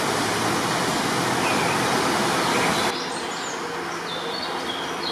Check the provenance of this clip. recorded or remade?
recorded